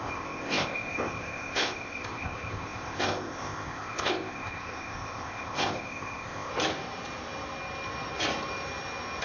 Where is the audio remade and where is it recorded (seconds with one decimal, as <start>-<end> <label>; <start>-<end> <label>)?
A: 0.0-6.5 remade; 6.5-9.2 recorded